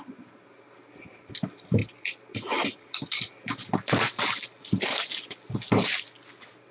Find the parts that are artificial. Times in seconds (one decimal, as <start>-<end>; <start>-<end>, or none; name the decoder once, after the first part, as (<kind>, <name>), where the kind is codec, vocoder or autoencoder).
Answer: none